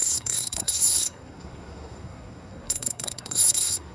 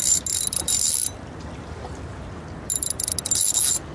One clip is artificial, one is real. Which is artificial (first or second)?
first